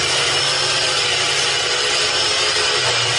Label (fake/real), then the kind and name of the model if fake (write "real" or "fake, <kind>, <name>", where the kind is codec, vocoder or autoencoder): real